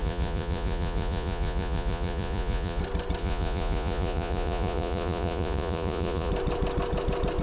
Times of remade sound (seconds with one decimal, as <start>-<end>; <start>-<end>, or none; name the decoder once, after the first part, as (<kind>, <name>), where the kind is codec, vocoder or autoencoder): 0.0-2.8 (vocoder, Vocos); 3.2-6.3